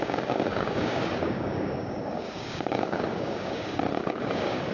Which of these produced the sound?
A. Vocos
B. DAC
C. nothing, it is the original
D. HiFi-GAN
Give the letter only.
B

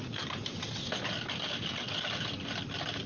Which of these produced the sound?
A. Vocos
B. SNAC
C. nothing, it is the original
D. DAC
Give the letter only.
C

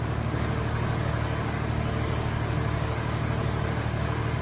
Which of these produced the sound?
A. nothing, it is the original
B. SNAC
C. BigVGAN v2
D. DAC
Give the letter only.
D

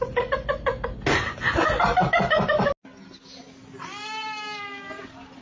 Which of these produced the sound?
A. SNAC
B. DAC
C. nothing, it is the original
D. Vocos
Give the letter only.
C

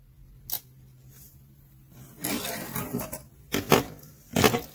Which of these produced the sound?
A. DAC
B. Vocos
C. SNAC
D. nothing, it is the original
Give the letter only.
D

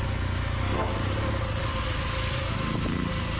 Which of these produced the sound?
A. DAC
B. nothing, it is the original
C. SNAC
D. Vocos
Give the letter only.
B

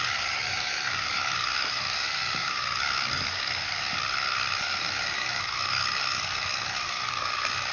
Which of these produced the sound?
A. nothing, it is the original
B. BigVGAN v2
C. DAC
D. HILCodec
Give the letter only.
C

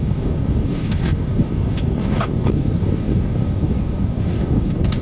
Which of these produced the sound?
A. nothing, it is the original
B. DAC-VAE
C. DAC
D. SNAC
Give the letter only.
C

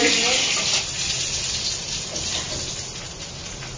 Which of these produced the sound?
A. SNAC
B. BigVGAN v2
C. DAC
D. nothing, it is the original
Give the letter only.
D